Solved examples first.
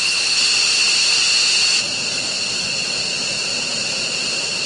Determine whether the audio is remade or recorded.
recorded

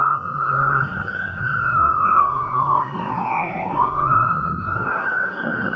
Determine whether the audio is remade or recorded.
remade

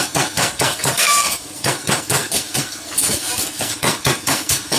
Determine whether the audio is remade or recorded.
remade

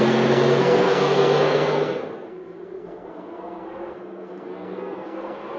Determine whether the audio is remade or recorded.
remade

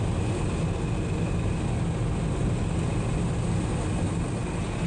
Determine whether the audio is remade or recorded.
recorded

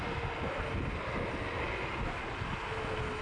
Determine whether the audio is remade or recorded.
recorded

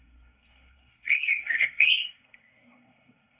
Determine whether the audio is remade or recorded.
remade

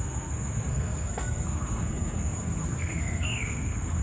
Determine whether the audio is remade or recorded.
remade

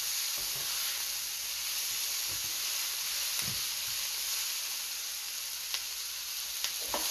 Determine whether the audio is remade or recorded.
recorded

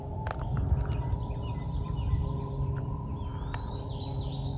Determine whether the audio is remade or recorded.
recorded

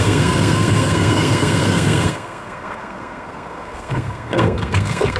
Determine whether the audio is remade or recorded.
remade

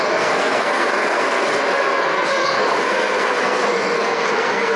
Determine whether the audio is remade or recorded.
remade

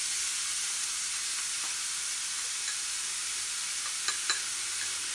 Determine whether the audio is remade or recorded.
recorded